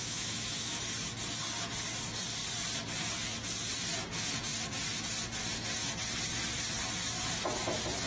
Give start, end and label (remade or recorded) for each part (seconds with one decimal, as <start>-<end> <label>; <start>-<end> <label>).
0.0-0.8 remade; 0.8-8.1 recorded